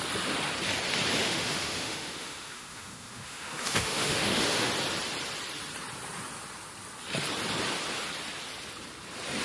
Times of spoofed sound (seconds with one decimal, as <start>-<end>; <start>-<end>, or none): 1.2-4.7